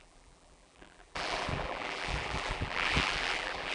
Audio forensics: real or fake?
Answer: fake